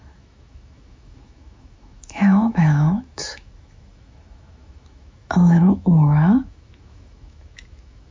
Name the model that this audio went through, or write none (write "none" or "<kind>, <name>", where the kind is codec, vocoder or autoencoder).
autoencoder, DAC-VAE